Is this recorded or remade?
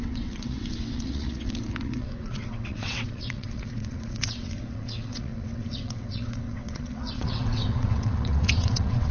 remade